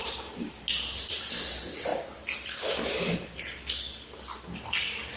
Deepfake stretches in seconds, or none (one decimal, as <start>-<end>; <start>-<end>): 0.0-1.3